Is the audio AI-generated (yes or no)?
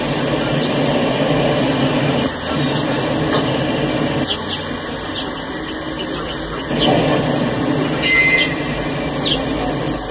no